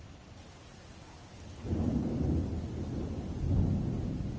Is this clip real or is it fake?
real